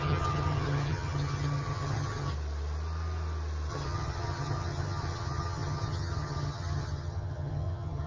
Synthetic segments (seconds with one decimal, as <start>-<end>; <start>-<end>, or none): 0.0-2.3; 3.7-8.1